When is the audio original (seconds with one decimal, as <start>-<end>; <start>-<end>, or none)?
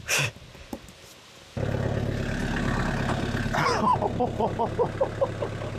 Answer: 0.0-5.8